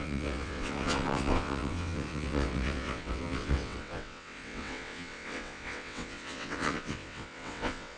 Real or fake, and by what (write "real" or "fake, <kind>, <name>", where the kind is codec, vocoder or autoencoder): fake, vocoder, WaveNeXt